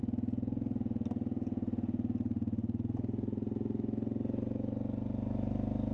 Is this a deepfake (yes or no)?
no